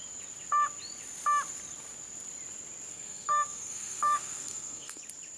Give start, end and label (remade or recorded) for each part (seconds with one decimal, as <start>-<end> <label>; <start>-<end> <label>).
0.0-2.9 recorded; 2.9-5.0 remade; 5.0-5.4 recorded